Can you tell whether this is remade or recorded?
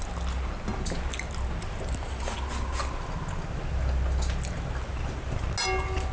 recorded